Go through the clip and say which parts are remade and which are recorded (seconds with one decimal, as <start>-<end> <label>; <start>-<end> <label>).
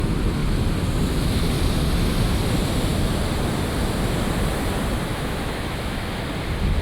0.0-5.1 recorded; 5.1-6.3 remade; 6.3-6.8 recorded